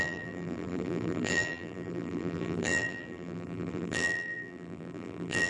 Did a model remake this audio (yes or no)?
yes